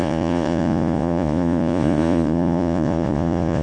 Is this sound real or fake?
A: fake